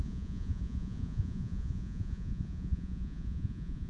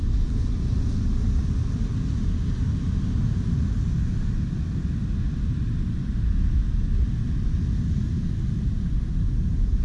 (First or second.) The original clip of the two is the second